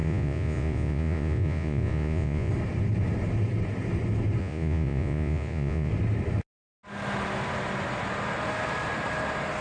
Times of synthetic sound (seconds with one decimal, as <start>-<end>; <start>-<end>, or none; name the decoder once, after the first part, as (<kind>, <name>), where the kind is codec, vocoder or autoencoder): 0.0-2.5 (vocoder, Vocos); 4.4-5.9